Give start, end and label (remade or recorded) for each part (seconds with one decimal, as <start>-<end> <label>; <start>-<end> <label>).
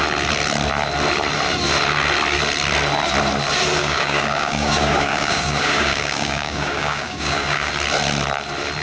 0.0-3.8 recorded; 3.8-7.7 remade; 7.7-8.8 recorded